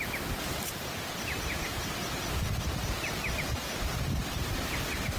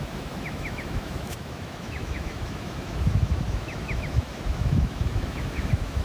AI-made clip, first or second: second